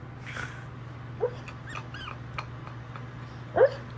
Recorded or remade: recorded